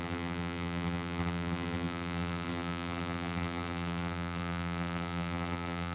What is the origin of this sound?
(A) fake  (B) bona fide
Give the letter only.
A